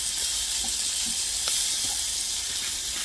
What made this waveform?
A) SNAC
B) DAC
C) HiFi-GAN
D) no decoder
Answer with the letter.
D